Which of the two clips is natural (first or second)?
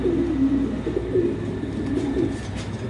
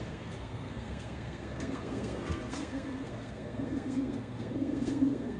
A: first